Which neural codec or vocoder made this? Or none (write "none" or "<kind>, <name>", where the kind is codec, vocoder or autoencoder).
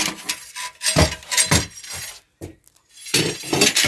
none